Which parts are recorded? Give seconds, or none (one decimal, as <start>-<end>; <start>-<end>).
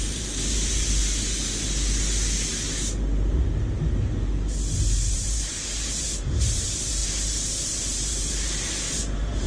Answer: 1.0-5.1